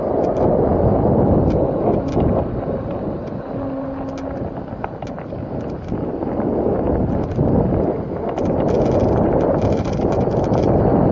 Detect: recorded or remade recorded